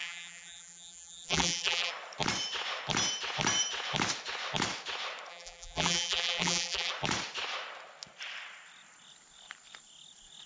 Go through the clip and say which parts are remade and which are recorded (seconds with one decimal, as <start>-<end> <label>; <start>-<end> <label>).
0.0-1.9 remade; 1.9-5.3 recorded; 5.3-6.9 remade; 6.9-10.5 recorded